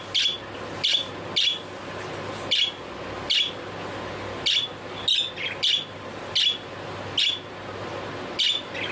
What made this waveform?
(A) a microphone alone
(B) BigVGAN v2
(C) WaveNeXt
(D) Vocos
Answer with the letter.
A